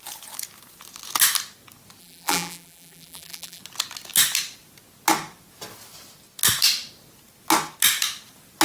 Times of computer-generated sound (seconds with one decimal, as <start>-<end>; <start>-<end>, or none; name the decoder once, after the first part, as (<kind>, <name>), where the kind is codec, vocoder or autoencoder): 2.0-3.6 (vocoder, BigVGAN v2)